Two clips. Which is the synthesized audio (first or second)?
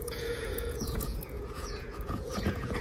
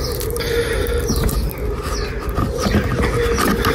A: first